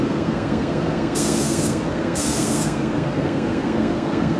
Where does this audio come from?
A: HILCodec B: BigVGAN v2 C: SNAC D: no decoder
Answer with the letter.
C